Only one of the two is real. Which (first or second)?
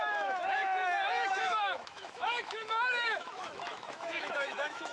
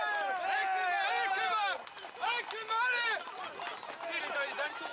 second